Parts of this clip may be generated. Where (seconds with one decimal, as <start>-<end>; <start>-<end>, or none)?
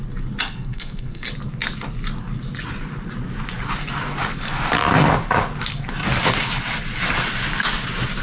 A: 0.4-1.3